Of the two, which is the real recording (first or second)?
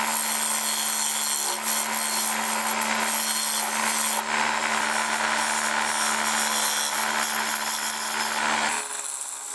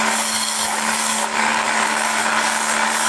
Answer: first